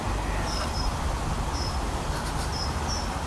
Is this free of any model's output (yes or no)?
yes